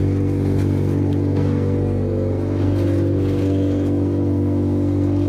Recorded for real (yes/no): no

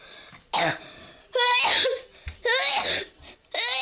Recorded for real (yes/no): yes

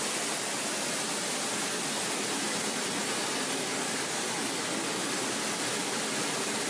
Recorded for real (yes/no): yes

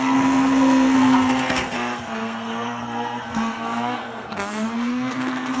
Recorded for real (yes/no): no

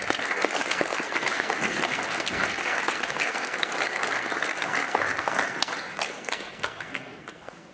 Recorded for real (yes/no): no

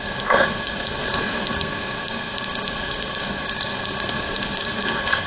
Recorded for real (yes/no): no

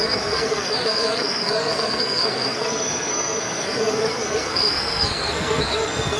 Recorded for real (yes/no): no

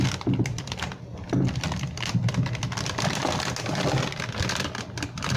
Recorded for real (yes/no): yes